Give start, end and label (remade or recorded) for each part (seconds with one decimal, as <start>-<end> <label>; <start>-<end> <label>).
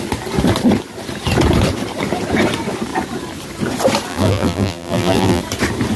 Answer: 0.0-4.1 recorded; 4.1-5.4 remade; 5.4-6.0 recorded